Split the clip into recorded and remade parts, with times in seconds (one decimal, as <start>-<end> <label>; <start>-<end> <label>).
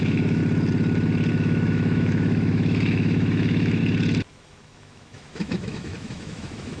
0.0-0.4 remade; 0.4-1.3 recorded; 1.3-3.8 remade; 3.8-4.3 recorded; 4.3-6.8 remade